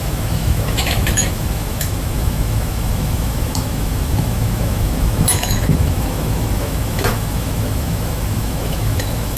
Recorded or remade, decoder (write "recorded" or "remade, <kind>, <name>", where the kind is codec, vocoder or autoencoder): remade, autoencoder, DAC-VAE